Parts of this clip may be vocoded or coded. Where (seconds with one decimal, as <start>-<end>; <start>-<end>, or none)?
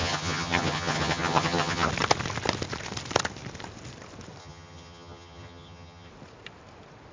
0.0-1.9; 4.4-6.1